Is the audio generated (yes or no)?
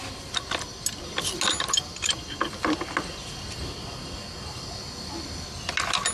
no